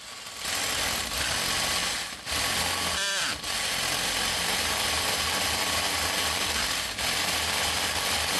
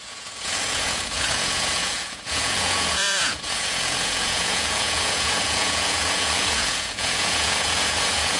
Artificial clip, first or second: second